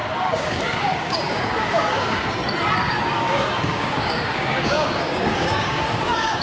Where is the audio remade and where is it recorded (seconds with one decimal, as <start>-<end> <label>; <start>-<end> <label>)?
0.0-2.4 remade; 2.4-3.1 recorded; 3.1-6.4 remade